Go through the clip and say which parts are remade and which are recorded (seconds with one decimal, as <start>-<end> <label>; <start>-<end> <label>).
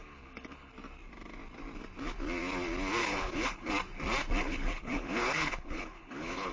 0.0-0.7 remade; 0.7-3.0 recorded; 3.0-3.7 remade; 3.7-4.4 recorded; 4.4-6.5 remade